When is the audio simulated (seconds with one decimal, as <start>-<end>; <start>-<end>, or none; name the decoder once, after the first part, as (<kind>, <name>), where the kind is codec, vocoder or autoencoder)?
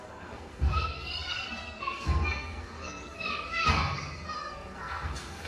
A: 0.0-5.5 (codec, SNAC)